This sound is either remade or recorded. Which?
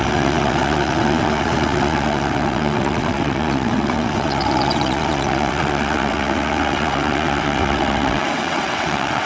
remade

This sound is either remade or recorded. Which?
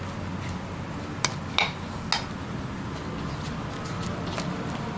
recorded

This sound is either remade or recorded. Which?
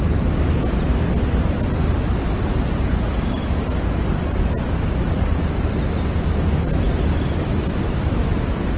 recorded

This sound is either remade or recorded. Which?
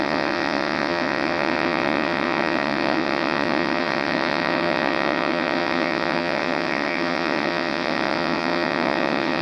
remade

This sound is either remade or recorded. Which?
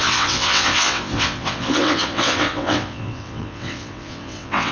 remade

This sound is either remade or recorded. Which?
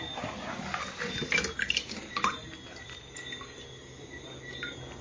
recorded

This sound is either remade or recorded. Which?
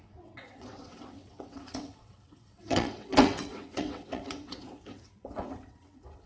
remade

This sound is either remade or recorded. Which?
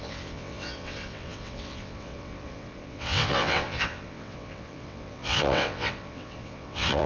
remade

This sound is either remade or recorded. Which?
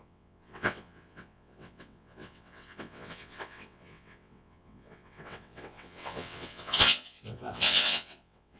remade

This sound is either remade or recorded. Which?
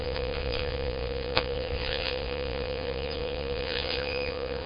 remade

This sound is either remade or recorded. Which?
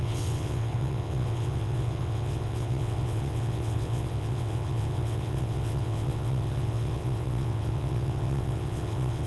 remade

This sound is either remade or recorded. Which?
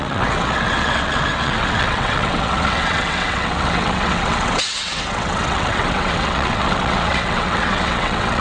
remade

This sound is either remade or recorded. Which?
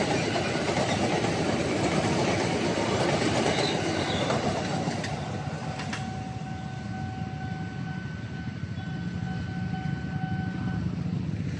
recorded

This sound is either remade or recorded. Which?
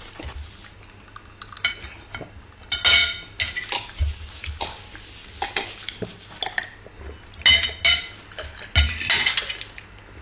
recorded